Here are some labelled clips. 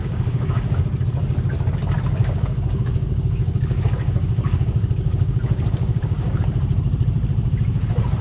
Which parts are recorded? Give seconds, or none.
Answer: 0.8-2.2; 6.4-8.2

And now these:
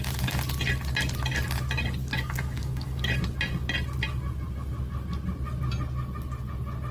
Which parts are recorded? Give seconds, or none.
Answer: 0.0-2.0; 3.1-6.9

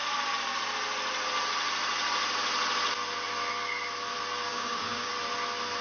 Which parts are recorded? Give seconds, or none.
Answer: 0.0-4.5; 5.1-5.8

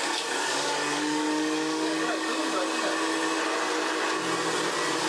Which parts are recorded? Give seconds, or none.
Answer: 2.4-5.1

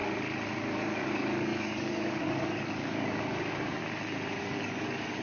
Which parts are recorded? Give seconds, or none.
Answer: 0.0-0.6; 3.8-4.4

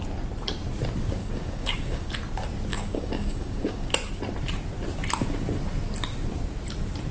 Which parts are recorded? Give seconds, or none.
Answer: 0.0-1.2; 2.1-2.7; 3.9-7.1

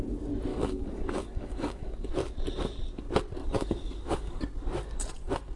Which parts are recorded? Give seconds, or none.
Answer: 0.0-0.5; 2.1-3.4; 4.4-5.6